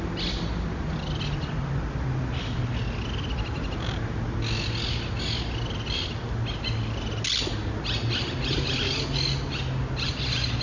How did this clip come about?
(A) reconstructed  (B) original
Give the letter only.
B